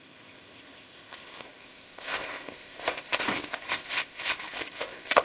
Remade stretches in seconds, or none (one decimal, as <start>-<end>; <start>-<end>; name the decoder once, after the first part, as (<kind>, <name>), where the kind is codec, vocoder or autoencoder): 0.0-5.2 (codec, ZipCodec)